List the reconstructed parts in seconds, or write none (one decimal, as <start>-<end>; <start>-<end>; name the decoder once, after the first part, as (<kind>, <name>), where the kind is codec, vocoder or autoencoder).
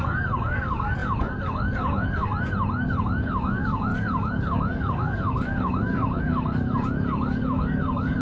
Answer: 0.0-2.3 (codec, DAC); 3.0-8.2